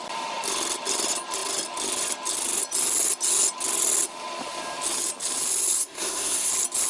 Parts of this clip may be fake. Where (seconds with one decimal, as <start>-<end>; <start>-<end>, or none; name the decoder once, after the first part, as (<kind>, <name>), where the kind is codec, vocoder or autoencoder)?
5.8-6.5 (codec, SNAC)